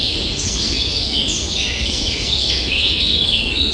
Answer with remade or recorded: remade